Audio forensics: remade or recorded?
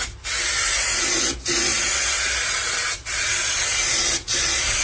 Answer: recorded